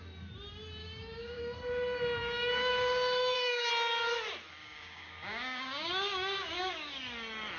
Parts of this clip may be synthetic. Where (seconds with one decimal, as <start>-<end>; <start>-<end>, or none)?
0.8-1.4; 2.2-3.7; 4.6-6.9